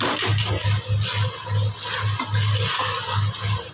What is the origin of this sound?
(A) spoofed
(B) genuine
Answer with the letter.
B